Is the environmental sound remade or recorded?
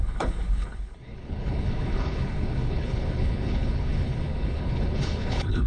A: remade